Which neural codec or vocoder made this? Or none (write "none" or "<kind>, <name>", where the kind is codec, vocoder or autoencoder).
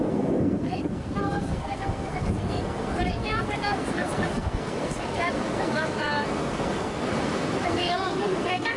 codec, SNAC